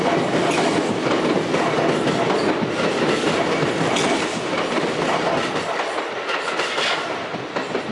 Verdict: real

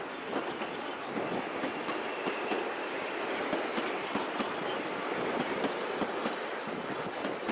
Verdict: real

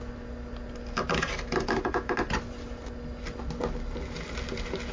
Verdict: real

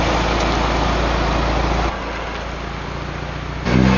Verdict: real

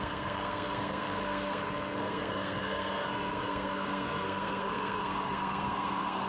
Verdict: fake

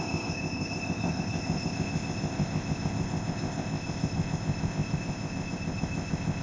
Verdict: fake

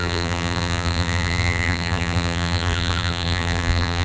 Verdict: fake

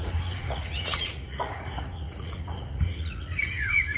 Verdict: fake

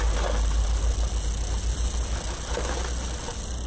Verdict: real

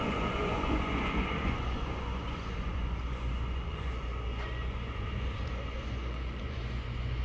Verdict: fake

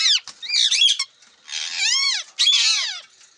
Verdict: real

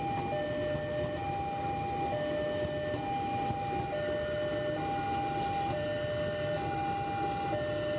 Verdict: real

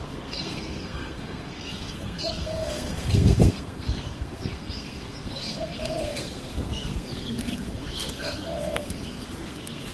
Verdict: fake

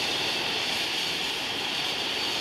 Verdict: fake